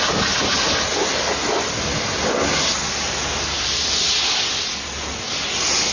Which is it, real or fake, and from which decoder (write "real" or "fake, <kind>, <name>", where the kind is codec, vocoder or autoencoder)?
real